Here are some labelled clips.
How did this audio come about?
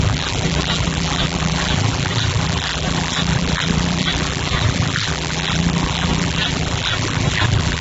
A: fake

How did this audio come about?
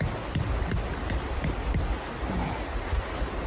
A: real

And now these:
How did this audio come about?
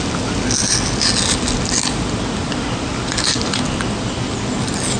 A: real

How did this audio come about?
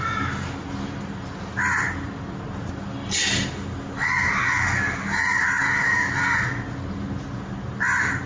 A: real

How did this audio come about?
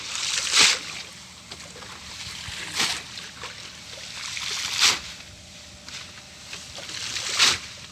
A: real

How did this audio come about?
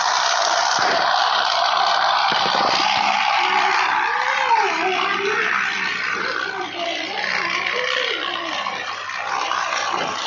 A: fake